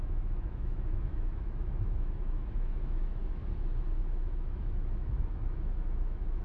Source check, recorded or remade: remade